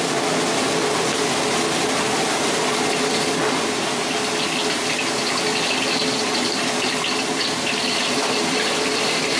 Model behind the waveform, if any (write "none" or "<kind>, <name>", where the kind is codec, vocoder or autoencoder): none